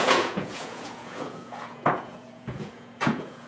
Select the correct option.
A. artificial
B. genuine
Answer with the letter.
A